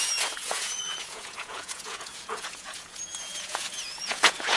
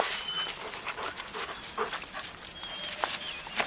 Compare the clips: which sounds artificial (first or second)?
first